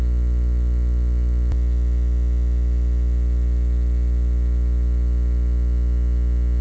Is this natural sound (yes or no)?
no